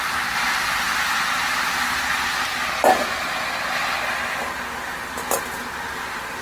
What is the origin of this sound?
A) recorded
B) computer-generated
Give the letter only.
A